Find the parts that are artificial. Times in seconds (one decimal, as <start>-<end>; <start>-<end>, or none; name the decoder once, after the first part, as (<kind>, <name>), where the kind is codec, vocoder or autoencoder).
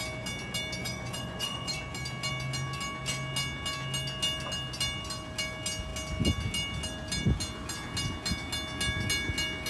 0.8-1.8 (vocoder, Vocos)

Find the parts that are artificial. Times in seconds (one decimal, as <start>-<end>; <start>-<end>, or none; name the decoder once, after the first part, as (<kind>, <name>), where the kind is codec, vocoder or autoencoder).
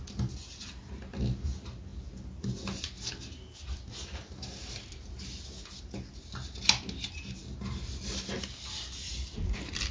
none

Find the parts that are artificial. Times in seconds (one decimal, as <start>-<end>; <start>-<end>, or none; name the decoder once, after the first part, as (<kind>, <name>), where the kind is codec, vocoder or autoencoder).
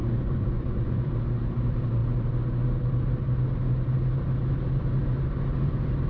0.0-1.1 (vocoder, Vocos)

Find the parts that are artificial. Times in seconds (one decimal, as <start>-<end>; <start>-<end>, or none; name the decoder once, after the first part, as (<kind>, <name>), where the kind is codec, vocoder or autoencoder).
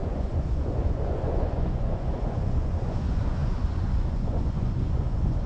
0.0-5.5 (vocoder, Vocos)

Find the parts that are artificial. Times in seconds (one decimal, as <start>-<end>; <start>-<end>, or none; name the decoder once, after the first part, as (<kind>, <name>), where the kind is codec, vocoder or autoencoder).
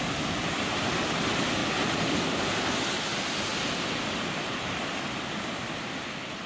none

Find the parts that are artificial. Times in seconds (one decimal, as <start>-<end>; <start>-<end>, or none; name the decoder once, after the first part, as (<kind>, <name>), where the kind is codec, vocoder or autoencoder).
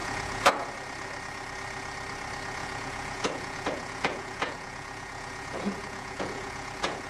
0.0-0.5 (vocoder, Vocos); 2.6-7.1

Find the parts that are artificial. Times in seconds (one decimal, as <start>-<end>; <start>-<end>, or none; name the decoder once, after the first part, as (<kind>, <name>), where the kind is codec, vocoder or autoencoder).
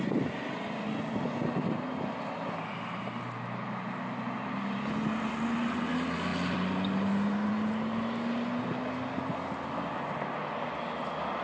none